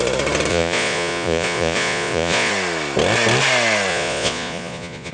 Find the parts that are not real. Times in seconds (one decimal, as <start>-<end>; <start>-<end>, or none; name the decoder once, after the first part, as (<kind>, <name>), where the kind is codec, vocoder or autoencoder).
0.5-2.5 (vocoder, Vocos); 3.9-5.1